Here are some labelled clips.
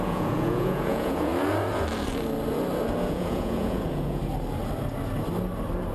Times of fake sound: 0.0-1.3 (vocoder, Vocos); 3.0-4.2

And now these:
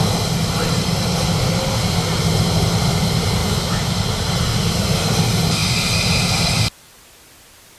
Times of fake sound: 3.4-4.0 (autoencoder, DAC-VAE)

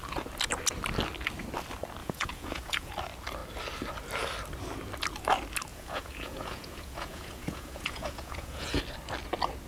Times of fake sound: 2.0-2.9 (vocoder, Vocos); 5.7-8.8

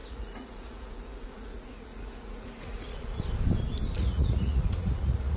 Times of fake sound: 0.0-3.2 (vocoder, Vocos); 4.0-5.4

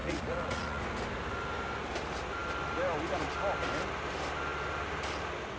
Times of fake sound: 0.0-0.8 (vocoder, Vocos)

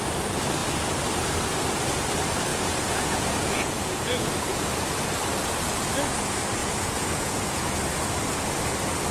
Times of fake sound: 2.5-4.3 (vocoder, Vocos); 6.6-7.8